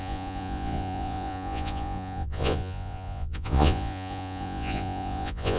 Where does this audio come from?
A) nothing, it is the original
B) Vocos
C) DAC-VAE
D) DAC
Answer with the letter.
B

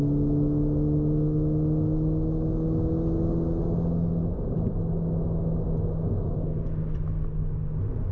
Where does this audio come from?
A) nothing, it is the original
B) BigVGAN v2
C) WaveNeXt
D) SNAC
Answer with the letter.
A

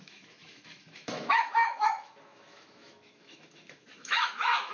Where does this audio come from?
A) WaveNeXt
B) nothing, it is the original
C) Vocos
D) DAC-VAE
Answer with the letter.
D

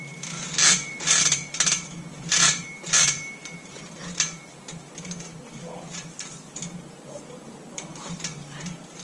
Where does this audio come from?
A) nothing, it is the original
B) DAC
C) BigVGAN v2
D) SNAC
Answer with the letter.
C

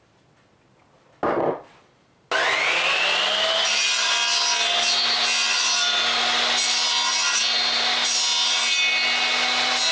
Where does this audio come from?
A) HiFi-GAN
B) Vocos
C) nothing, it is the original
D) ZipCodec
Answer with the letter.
C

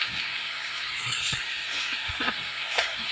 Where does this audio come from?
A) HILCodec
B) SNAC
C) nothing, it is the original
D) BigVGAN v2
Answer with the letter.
B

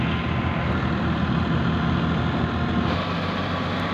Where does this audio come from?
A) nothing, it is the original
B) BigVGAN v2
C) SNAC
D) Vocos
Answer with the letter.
A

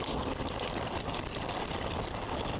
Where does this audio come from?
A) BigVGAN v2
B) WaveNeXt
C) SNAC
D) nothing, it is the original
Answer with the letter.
D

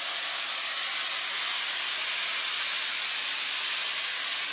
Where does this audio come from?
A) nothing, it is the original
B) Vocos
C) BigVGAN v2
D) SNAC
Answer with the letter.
A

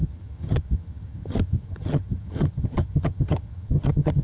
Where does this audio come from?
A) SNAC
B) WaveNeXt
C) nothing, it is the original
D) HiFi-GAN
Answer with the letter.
D